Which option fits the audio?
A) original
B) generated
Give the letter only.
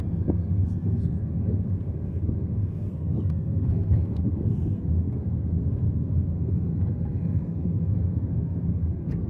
B